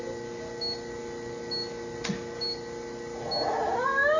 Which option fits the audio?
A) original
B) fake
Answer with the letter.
A